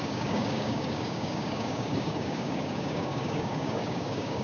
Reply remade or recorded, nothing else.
remade